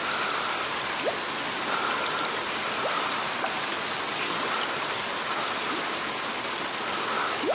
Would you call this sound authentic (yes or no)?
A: yes